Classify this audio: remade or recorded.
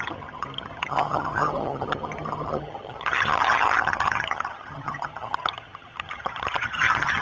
remade